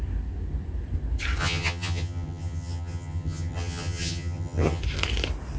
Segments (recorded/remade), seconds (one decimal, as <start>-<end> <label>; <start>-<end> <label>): 0.0-1.4 recorded; 1.4-4.8 remade; 4.8-5.6 recorded

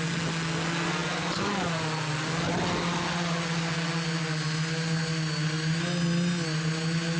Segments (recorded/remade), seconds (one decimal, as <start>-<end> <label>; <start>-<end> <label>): 0.0-7.2 recorded